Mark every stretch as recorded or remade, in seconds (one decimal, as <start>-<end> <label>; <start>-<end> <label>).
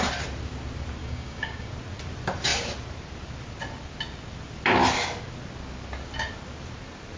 0.0-1.0 recorded; 1.0-1.7 remade; 1.7-7.2 recorded